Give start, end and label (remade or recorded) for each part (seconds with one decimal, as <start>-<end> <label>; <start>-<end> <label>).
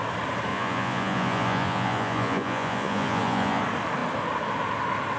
0.0-0.5 recorded; 0.5-3.6 remade; 3.6-5.2 recorded